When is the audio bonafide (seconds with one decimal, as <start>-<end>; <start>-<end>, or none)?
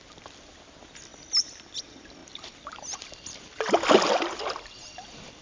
none